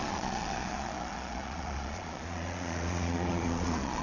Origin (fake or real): fake